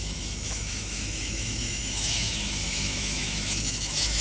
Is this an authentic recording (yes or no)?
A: no